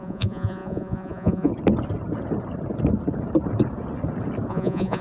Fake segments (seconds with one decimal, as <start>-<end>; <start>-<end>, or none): 0.0-1.5; 4.5-5.0